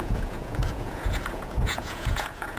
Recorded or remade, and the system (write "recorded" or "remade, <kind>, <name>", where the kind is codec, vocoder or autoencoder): remade, vocoder, Vocos